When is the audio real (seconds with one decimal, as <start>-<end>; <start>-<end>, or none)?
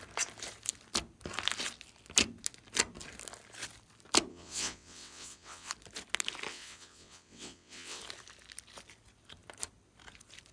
0.0-4.3; 5.7-6.5; 8.0-10.5